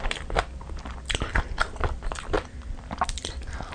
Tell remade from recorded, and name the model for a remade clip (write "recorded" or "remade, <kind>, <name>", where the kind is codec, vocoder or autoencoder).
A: remade, vocoder, BigVGAN v2